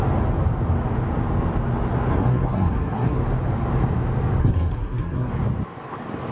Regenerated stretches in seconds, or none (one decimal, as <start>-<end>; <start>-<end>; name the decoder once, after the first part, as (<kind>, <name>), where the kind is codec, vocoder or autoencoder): 2.1-3.2 (codec, SNAC); 4.4-5.3